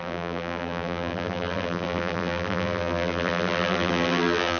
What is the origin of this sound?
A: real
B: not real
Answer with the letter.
B